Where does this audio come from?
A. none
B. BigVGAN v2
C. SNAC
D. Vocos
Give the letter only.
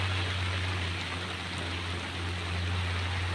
A